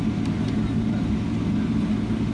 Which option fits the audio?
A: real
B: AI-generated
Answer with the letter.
A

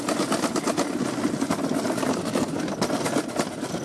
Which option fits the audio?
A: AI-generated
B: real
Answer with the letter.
B